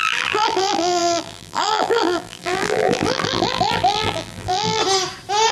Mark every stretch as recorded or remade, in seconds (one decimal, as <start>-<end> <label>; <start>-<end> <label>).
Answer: 0.0-4.8 remade; 4.8-5.5 recorded